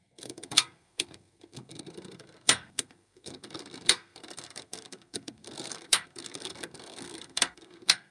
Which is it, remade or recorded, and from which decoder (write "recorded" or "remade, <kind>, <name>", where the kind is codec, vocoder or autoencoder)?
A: remade, codec, SNAC